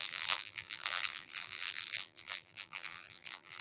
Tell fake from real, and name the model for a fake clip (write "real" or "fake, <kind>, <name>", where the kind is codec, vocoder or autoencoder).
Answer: fake, vocoder, BigVGAN v2